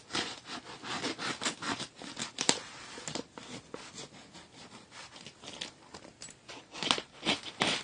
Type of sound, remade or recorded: recorded